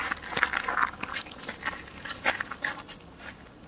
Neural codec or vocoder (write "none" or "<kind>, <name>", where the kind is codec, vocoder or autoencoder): none